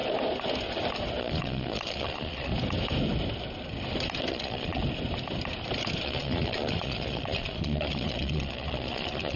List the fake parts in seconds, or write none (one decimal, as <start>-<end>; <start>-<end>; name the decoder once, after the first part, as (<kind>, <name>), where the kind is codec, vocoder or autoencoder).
1.2-2.5 (vocoder, Vocos); 4.3-4.8; 6.0-9.4